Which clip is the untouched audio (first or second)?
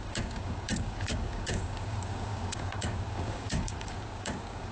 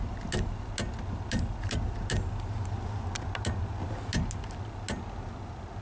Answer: second